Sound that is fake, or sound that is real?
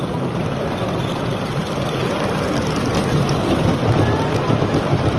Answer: real